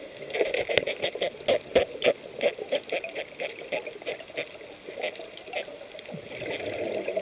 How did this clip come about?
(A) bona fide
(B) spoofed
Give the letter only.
A